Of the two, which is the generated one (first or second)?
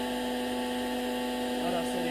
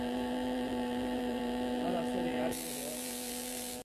second